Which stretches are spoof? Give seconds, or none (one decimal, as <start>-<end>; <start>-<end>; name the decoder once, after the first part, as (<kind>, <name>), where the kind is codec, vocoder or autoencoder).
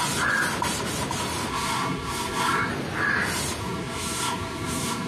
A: 1.5-2.7 (codec, SNAC); 3.6-5.1